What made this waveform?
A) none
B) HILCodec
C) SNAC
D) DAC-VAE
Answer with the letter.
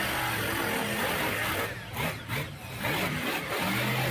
A